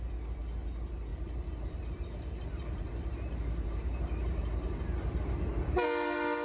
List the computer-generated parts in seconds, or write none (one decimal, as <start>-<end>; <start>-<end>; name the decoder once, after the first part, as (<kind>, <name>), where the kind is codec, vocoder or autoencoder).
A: 1.1-4.8 (vocoder, BigVGAN v2)